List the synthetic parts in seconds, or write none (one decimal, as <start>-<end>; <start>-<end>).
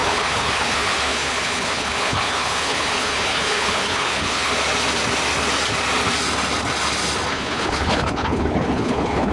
0.0-4.5; 7.3-9.3